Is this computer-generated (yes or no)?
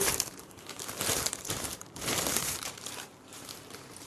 yes